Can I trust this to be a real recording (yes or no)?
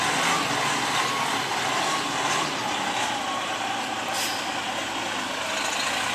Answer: yes